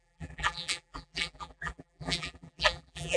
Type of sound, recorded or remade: remade